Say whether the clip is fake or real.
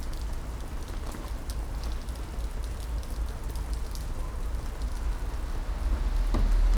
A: real